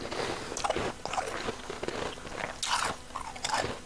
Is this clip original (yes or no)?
yes